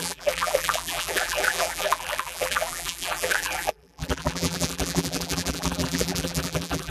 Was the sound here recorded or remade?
remade